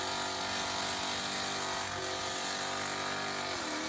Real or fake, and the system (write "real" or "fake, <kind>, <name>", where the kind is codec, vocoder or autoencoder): real